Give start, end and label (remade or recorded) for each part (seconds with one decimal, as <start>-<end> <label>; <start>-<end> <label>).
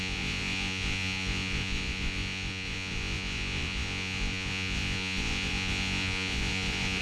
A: 0.0-7.0 remade